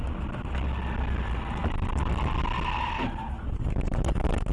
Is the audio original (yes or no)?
yes